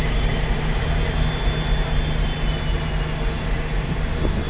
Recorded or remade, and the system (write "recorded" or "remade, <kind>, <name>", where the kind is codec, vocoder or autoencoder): recorded